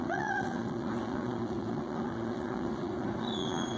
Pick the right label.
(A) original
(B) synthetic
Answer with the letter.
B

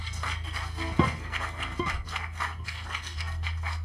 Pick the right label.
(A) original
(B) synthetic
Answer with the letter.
B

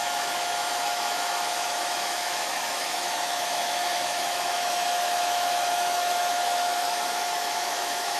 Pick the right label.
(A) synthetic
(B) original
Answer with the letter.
A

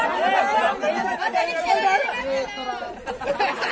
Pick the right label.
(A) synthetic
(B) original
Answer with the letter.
B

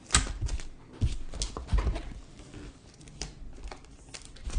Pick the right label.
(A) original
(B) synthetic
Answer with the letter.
A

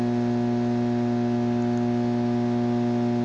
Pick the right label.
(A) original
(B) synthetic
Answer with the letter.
A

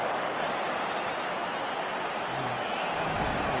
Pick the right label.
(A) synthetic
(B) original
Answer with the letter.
B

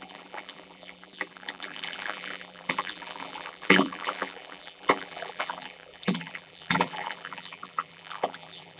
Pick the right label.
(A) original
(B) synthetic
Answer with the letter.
B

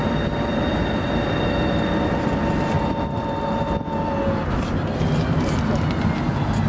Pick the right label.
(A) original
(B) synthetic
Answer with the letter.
A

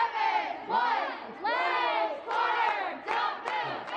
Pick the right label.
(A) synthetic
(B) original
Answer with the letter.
B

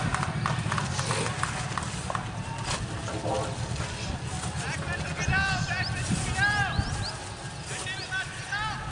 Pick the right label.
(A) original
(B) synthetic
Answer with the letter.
A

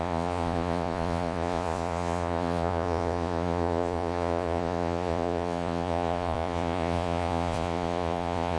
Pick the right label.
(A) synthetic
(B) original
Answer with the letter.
A